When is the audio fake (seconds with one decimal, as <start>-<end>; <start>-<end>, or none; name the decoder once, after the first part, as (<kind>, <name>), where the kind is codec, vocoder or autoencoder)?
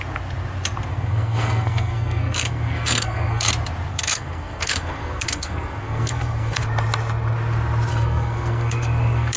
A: 0.9-3.5 (codec, SNAC); 3.9-6.6; 7.9-9.4